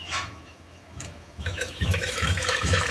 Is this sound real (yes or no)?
no